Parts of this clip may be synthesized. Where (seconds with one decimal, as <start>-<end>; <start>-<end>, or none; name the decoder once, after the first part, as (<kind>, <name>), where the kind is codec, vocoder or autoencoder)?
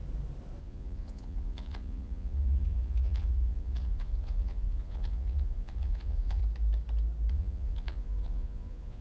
0.6-6.4 (vocoder, Vocos); 7.3-9.0